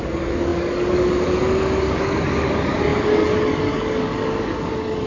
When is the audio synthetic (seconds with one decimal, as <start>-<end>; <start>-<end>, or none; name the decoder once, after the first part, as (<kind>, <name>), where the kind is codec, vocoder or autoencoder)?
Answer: 0.0-5.1 (codec, DAC)

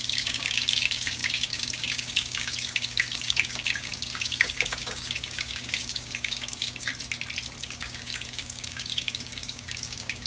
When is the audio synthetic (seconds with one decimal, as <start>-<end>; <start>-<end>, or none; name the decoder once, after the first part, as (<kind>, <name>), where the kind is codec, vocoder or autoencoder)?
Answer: 0.0-6.9 (codec, DAC); 7.6-10.3

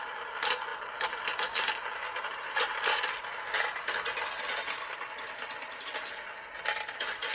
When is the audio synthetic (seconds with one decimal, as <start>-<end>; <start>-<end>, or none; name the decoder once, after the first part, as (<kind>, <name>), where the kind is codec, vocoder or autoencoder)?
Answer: none

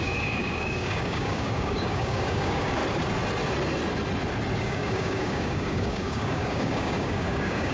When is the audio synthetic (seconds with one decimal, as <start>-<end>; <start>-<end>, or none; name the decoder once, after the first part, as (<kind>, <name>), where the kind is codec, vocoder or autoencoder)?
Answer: 0.0-2.8 (codec, DAC); 4.6-7.7

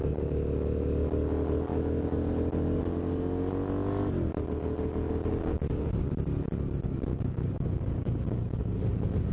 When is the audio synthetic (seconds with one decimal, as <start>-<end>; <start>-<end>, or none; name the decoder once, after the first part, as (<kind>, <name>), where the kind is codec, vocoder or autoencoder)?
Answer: 5.3-5.9 (codec, DAC); 7.1-8.8

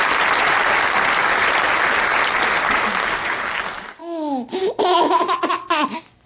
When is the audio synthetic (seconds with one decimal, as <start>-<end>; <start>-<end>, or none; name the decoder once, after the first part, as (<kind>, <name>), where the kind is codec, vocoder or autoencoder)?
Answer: 3.0-3.6 (codec, DAC)

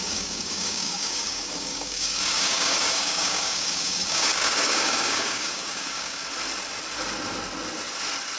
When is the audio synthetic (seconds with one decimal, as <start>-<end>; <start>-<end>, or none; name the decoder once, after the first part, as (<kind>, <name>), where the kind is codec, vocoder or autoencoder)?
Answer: 0.0-6.2 (codec, DAC)